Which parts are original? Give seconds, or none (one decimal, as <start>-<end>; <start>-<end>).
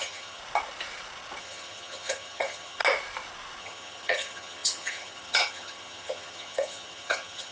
0.4-1.4; 2.8-3.6